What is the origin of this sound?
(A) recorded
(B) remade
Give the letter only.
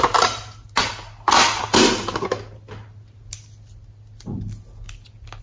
A